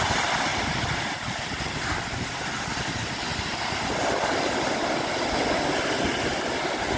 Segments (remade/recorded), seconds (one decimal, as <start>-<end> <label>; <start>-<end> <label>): 0.0-0.5 recorded; 0.5-2.0 remade; 2.0-3.3 recorded; 3.3-3.9 remade; 3.9-7.0 recorded